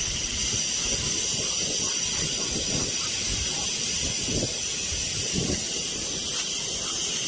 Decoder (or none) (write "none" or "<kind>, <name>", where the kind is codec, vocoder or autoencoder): none